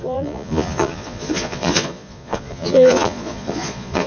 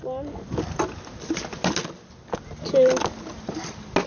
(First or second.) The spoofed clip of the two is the first